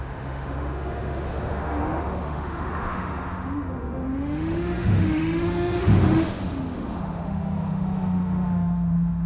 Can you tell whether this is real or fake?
fake